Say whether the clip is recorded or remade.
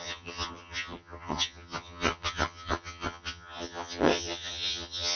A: remade